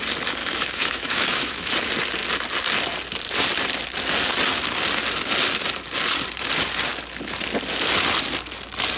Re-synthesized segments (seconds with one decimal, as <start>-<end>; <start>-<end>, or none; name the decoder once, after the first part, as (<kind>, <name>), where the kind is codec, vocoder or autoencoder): 0.4-1.7 (autoencoder, DAC-VAE)